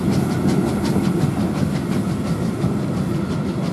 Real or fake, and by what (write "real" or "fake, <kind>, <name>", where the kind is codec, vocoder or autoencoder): real